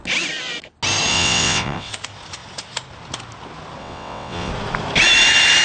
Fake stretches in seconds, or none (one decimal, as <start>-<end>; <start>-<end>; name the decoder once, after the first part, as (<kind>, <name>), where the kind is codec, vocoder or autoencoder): 1.1-1.9 (vocoder, WaveNeXt); 3.8-4.5